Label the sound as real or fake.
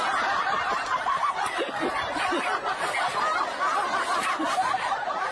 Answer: real